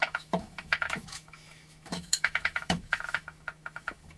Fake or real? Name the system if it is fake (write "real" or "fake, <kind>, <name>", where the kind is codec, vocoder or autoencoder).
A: fake, autoencoder, DAC-VAE